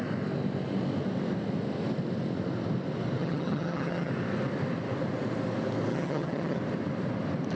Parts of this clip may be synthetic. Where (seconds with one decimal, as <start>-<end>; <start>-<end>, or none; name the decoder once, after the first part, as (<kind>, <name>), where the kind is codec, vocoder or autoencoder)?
3.2-4.1 (vocoder, HiFi-GAN); 5.9-6.6

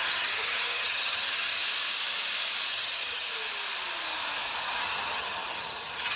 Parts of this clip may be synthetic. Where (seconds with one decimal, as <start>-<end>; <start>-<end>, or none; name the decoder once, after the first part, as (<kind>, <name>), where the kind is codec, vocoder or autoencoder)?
0.0-1.6 (vocoder, HiFi-GAN); 2.7-3.3; 4.8-6.2

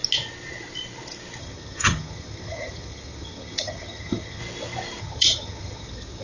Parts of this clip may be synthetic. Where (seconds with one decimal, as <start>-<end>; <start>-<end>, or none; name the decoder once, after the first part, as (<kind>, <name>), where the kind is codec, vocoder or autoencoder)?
1.4-4.4 (vocoder, HiFi-GAN); 5.0-6.2

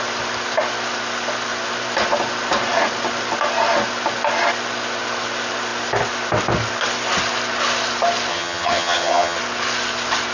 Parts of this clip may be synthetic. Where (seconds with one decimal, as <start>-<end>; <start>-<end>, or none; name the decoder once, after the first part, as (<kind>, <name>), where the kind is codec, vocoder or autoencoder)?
8.3-9.4 (vocoder, HiFi-GAN)

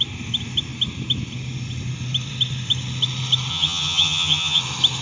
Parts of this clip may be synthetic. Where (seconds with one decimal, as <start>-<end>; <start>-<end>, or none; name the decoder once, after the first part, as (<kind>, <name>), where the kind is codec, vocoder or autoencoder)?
3.5-4.6 (vocoder, HiFi-GAN)